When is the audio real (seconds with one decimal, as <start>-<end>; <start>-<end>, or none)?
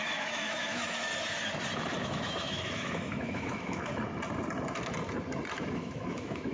1.1-2.0; 3.9-5.7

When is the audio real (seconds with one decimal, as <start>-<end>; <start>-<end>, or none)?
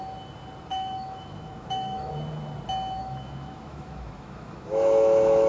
0.0-0.7; 2.1-3.0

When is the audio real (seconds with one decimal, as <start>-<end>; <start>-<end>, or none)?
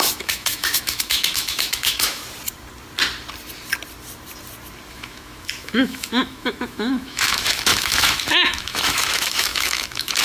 2.2-4.9